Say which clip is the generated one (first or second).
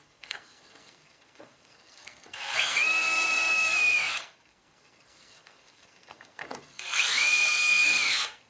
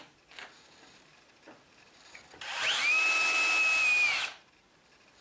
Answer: first